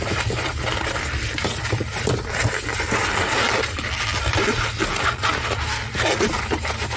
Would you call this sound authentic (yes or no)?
yes